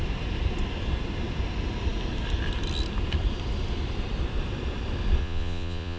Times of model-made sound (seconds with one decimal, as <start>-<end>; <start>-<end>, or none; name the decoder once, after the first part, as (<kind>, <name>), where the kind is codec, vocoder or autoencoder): 5.2-6.0 (vocoder, Vocos)